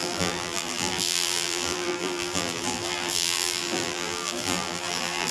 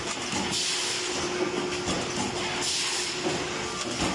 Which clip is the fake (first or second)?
first